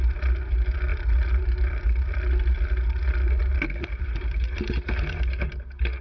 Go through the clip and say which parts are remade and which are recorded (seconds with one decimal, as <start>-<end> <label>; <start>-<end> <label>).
0.0-6.0 recorded